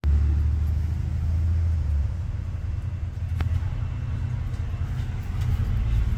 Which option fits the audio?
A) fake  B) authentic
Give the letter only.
B